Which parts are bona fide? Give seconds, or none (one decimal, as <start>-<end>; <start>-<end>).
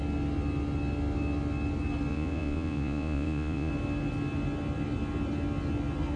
0.0-2.1; 3.7-6.2